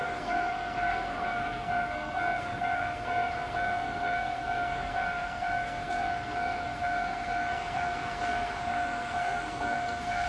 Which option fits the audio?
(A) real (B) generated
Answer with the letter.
B